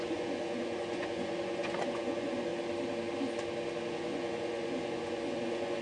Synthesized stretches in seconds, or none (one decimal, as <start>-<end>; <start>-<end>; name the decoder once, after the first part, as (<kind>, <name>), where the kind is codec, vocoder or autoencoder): 0.0-2.5 (vocoder, Vocos); 3.9-5.8

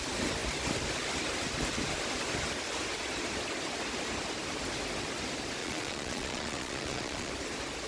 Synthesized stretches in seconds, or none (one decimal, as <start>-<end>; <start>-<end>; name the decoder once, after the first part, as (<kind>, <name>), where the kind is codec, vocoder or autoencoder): 5.6-7.3 (vocoder, Vocos)